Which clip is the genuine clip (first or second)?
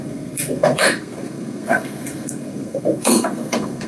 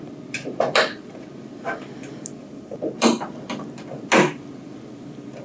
second